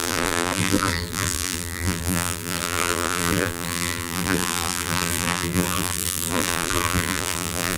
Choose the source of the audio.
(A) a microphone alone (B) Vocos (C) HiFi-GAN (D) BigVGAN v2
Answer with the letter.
D